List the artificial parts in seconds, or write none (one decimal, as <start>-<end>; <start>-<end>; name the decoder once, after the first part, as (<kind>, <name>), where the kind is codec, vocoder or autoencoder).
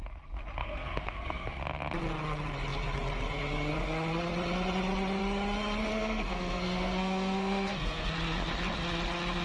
0.6-1.6 (codec, SNAC); 5.9-8.1